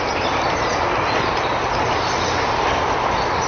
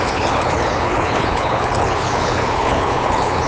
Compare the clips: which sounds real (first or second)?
first